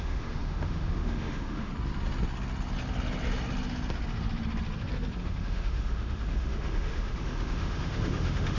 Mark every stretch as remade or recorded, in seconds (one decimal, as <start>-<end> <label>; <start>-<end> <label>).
0.0-1.7 remade; 1.7-5.2 recorded; 5.2-8.6 remade